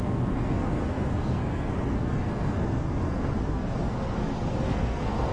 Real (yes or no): no